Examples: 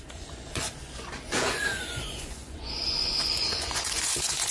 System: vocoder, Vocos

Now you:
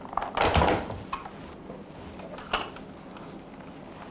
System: none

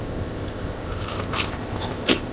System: codec, ZipCodec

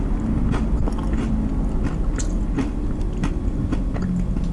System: none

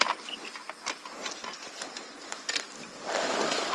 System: none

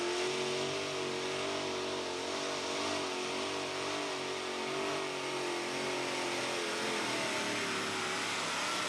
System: none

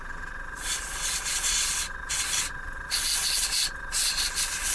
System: vocoder, Vocos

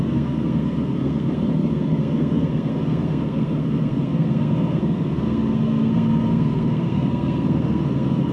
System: codec, SNAC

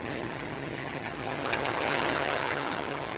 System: vocoder, HiFi-GAN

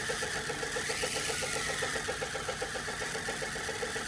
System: none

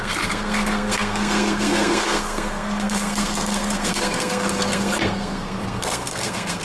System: codec, SNAC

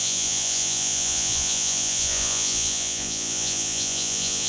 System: vocoder, Vocos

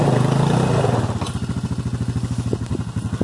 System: none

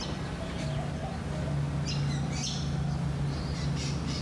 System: none